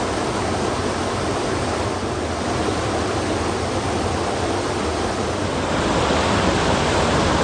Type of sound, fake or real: real